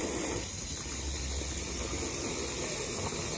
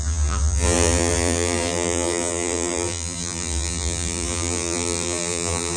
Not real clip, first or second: second